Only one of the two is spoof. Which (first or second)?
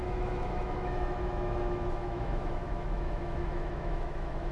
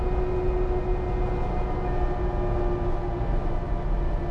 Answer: first